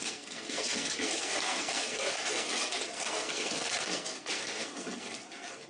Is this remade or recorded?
remade